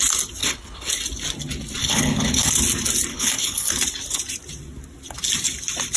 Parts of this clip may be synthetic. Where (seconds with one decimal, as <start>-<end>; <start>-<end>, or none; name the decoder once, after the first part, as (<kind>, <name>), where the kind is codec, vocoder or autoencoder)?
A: 0.4-0.9 (codec, HILCodec); 1.8-2.5; 3.1-3.7